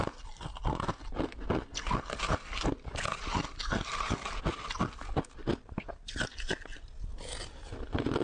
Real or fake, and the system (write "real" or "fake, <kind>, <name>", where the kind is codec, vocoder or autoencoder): real